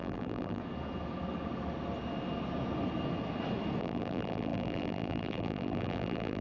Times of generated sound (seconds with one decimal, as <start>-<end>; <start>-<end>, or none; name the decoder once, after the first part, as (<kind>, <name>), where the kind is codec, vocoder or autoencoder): 0.0-0.6 (vocoder, BigVGAN v2); 3.8-6.4